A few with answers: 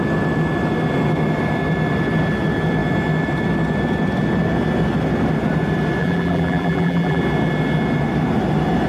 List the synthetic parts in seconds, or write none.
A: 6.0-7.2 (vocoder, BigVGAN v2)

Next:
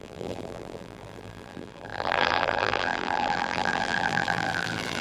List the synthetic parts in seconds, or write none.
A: 0.0-5.0 (vocoder, BigVGAN v2)

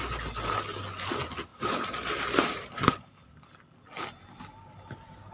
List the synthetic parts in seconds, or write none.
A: 1.5-3.4 (vocoder, BigVGAN v2)